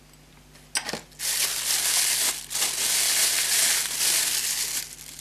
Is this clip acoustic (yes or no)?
yes